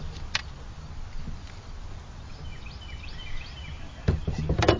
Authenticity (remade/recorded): recorded